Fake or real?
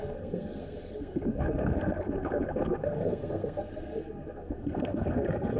fake